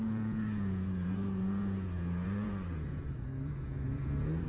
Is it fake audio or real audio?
fake